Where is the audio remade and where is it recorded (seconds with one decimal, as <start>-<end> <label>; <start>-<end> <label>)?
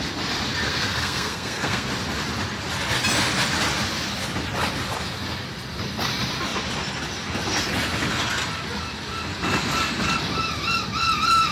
0.0-0.7 recorded; 0.7-1.9 remade; 1.9-11.5 recorded